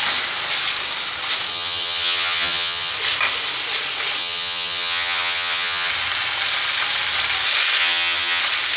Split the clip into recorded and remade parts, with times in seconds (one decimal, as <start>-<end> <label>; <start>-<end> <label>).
0.0-1.5 recorded; 1.5-2.9 remade; 2.9-4.2 recorded; 4.2-5.9 remade; 5.9-7.8 recorded; 7.8-8.4 remade; 8.4-8.8 recorded

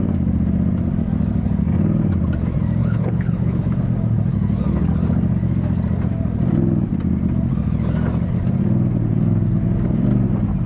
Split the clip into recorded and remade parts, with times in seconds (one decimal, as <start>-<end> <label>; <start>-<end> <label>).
0.0-2.8 recorded; 2.8-3.6 remade; 3.6-10.7 recorded

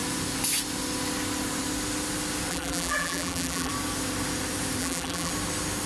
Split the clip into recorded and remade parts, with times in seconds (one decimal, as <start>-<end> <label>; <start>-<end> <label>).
0.0-2.5 recorded; 2.5-3.7 remade; 3.7-4.8 recorded; 4.8-5.3 remade; 5.3-5.9 recorded

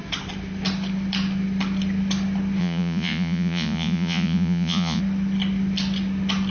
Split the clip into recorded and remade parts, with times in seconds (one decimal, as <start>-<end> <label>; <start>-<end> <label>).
0.0-2.6 recorded; 2.6-5.0 remade; 5.0-6.5 recorded

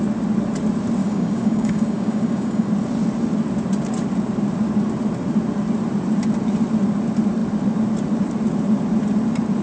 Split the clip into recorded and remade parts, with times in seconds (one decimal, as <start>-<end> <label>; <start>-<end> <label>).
0.0-1.0 recorded; 1.0-2.7 remade; 2.7-9.6 recorded